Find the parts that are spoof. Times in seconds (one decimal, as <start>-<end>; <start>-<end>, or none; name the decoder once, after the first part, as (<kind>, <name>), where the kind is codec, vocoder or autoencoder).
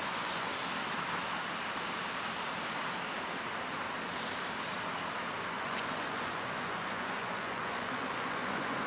0.0-0.5 (vocoder, Vocos); 5.5-8.9